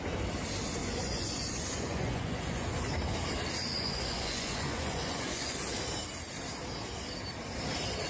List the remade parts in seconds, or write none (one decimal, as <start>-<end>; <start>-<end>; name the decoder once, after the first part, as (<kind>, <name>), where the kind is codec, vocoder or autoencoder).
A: 0.8-2.7 (vocoder, Vocos); 3.7-5.6